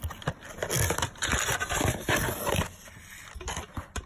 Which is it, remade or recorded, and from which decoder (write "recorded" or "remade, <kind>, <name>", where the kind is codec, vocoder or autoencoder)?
recorded